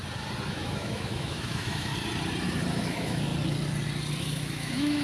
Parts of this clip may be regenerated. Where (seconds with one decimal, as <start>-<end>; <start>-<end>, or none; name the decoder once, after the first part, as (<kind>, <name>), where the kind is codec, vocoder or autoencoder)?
0.5-1.9 (autoencoder, DAC-VAE); 2.7-3.3; 4.2-5.0